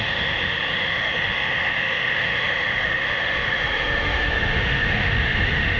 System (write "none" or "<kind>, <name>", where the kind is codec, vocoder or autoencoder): autoencoder, DAC-VAE